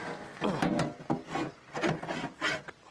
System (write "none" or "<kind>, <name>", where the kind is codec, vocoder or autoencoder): none